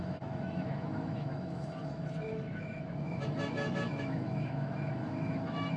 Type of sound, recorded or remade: remade